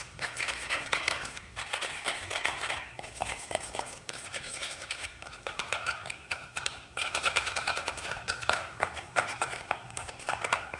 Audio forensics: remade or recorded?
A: remade